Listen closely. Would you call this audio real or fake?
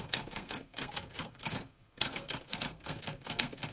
fake